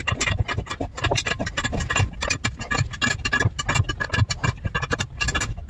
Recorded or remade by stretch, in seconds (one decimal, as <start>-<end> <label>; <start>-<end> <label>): 0.0-5.7 recorded